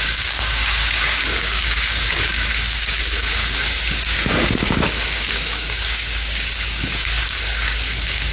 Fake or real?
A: fake